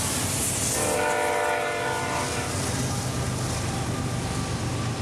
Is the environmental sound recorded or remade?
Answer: recorded